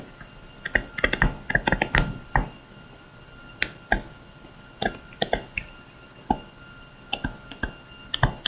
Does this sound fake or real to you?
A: real